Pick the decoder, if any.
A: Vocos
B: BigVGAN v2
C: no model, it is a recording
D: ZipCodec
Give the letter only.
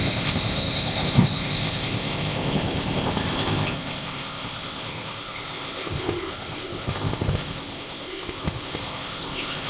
D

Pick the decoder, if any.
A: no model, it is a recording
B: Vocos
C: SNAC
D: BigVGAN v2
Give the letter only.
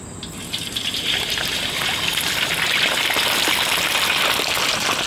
A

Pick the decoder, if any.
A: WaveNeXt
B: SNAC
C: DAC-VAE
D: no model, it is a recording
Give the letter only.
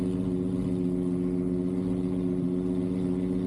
D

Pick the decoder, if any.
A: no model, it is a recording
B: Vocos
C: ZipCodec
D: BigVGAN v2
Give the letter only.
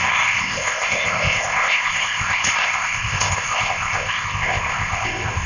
C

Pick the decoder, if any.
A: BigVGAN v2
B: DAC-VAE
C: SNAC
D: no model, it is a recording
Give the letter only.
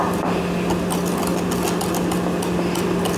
D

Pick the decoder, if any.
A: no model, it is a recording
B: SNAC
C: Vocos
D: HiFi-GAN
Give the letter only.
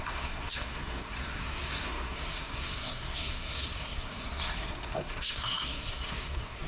B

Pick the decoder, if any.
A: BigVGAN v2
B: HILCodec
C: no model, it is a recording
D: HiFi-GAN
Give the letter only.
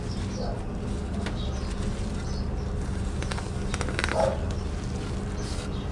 C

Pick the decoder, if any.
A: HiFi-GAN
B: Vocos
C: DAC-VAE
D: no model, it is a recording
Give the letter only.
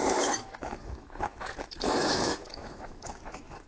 C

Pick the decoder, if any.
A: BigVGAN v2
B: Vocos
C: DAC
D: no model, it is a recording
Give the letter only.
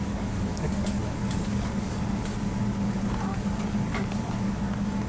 C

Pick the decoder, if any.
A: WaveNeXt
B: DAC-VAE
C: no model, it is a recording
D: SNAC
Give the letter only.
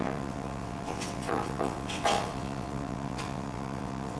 A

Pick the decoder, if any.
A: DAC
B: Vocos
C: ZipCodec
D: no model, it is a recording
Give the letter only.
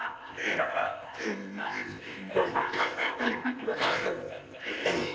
C